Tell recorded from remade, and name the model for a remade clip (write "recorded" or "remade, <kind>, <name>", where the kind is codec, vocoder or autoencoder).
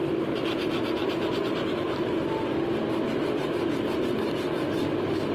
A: recorded